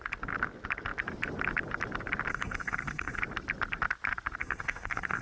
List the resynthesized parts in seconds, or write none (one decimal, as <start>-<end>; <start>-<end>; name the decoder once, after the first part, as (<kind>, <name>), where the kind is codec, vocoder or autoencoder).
2.3-3.2 (codec, SNAC); 4.4-5.2